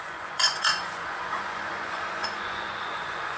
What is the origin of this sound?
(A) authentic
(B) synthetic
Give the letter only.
B